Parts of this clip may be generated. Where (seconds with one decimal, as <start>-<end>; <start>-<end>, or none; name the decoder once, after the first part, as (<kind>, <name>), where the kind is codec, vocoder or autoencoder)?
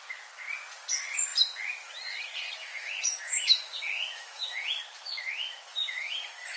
2.6-6.6 (autoencoder, DAC-VAE)